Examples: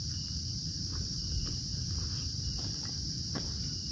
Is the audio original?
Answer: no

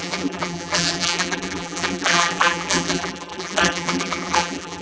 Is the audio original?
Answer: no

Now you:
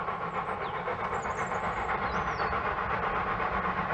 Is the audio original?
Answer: no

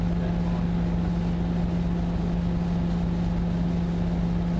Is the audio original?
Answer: yes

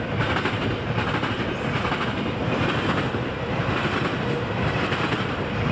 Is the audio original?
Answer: no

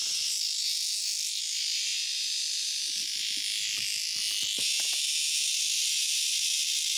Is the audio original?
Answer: yes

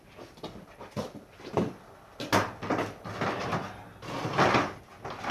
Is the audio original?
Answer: yes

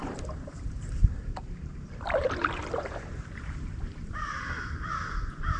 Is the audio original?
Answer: no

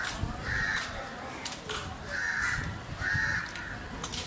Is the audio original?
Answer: yes